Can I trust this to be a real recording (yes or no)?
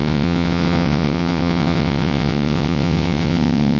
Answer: no